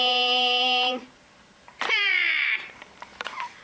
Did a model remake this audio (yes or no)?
yes